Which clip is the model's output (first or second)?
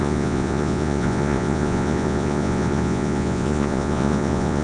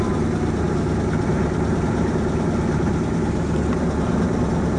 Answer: first